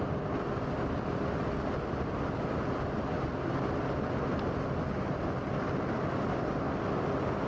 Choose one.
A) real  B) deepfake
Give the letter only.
A